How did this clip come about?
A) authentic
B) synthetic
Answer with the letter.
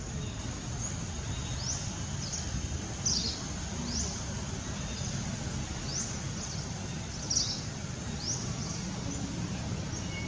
A